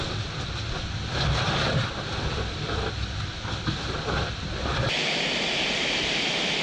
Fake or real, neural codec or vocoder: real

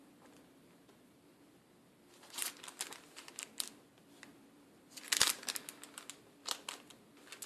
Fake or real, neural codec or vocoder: real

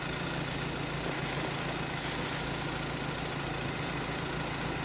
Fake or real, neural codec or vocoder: real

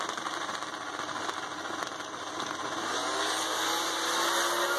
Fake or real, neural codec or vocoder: real